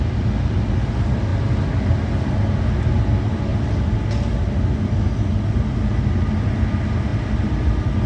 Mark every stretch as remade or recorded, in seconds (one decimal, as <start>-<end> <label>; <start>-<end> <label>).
0.0-8.1 recorded